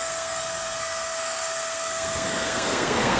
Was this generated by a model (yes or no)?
yes